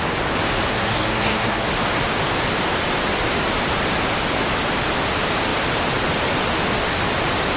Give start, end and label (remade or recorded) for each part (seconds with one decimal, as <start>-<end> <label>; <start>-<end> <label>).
0.0-0.7 recorded; 0.7-1.7 remade; 1.7-7.6 recorded